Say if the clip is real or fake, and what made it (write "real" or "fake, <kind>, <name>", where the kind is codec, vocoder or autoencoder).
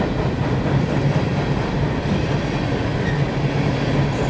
real